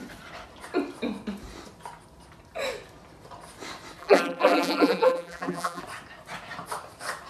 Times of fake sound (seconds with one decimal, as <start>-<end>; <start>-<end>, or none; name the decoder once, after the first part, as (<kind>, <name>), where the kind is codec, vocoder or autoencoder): 4.0-5.8 (vocoder, BigVGAN v2)